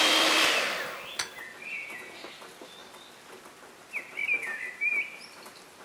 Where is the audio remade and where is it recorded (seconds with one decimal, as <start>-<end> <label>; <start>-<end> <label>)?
0.0-5.8 recorded